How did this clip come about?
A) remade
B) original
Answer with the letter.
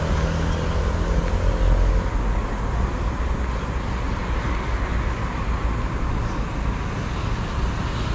B